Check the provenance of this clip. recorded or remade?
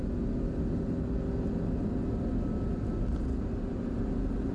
recorded